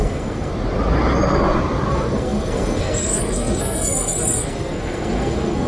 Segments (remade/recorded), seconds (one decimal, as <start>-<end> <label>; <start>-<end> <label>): 0.0-0.5 remade; 0.5-1.9 recorded; 1.9-5.7 remade